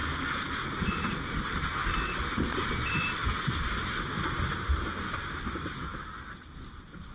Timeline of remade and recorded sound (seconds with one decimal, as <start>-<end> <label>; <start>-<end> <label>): 0.0-0.7 recorded; 0.7-1.8 remade; 1.8-2.7 recorded; 2.7-7.1 remade